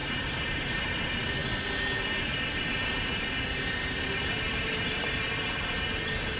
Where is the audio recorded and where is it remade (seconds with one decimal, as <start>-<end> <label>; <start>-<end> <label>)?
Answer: 0.0-1.0 remade; 1.0-4.2 recorded; 4.2-5.0 remade; 5.0-6.4 recorded

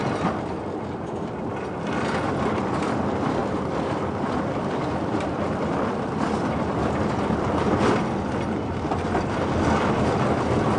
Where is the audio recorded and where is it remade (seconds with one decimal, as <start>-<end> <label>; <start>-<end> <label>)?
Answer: 0.0-3.4 recorded; 3.4-8.3 remade; 8.3-10.8 recorded

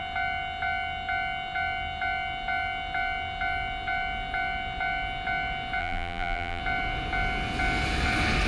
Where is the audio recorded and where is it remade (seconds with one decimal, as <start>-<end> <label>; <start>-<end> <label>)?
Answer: 0.0-5.8 recorded; 5.8-6.6 remade; 6.6-8.5 recorded